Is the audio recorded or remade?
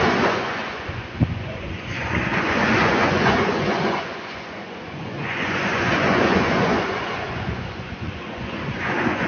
remade